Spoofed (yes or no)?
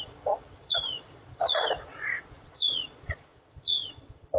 yes